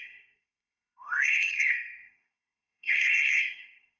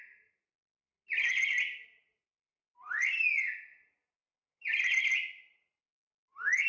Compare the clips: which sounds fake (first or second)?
first